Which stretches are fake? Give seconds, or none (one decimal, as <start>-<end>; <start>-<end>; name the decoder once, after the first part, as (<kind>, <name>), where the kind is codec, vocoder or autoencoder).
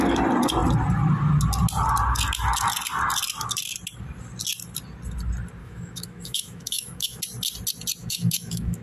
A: 5.6-7.2 (autoencoder, DAC-VAE); 8.0-8.8